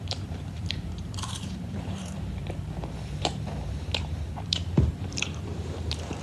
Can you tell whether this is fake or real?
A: fake